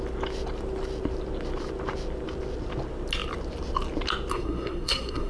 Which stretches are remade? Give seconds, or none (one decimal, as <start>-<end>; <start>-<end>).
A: 4.3-5.3